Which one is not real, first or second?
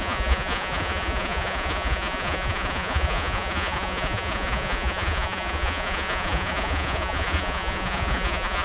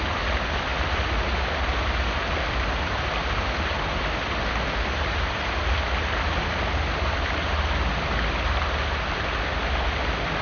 first